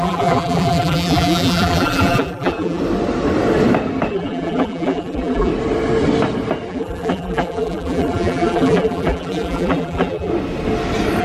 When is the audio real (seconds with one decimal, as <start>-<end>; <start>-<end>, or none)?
2.8-4.1; 5.5-6.7; 10.3-11.2